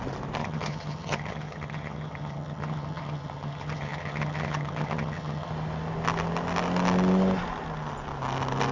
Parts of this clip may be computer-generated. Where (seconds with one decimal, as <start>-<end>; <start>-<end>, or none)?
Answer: 0.4-5.5

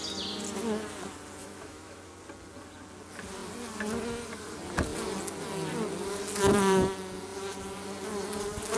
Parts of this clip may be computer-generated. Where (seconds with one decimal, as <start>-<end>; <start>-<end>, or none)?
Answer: 1.4-2.1